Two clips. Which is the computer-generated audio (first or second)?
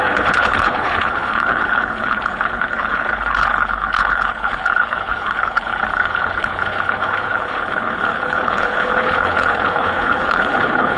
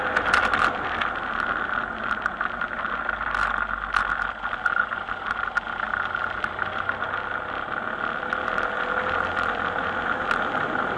first